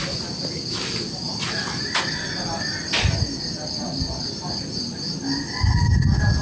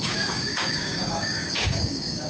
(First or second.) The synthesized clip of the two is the second